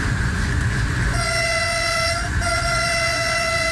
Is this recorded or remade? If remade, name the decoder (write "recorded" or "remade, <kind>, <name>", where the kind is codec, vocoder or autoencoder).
remade, vocoder, Vocos